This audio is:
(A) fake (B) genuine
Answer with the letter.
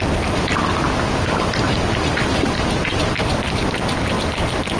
A